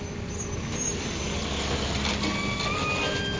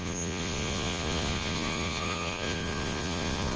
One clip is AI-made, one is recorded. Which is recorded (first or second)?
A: first